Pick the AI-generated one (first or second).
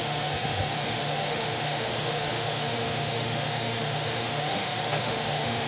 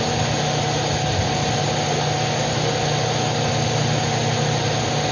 first